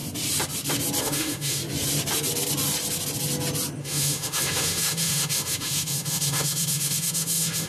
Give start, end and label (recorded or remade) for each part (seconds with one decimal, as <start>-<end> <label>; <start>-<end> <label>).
0.0-1.0 recorded; 1.0-1.6 remade; 1.6-3.8 recorded; 3.8-7.7 remade